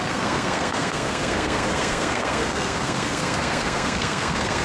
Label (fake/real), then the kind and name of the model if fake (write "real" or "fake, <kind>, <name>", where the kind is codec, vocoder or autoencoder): fake, codec, SNAC